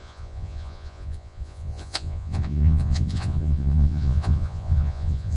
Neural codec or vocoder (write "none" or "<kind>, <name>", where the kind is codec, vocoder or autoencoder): vocoder, Vocos